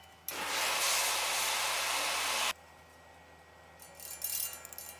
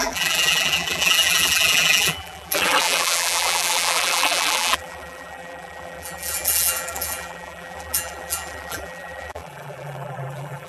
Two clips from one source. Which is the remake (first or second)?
second